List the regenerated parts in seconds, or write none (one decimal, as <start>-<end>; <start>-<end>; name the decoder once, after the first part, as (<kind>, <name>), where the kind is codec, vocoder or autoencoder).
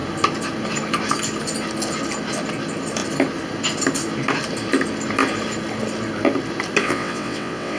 6.8-7.8 (vocoder, WaveNeXt)